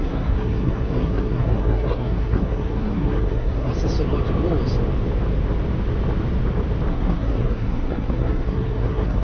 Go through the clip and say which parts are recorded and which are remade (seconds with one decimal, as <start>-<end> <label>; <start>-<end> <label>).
0.0-3.7 remade; 3.7-6.9 recorded; 6.9-9.2 remade